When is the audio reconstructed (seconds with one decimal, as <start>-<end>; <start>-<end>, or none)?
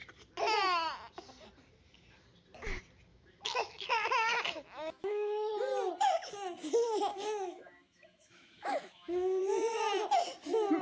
3.1-5.5; 7.1-9.4